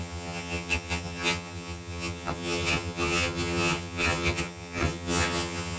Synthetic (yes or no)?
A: yes